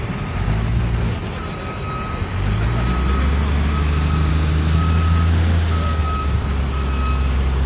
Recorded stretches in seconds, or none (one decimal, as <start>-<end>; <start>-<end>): 0.0-7.7